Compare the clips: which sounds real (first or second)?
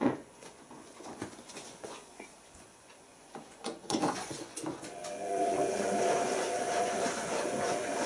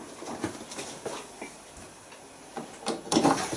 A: second